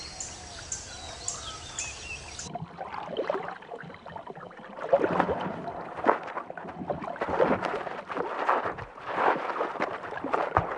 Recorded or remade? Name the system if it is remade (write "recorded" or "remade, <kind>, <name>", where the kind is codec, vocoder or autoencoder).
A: recorded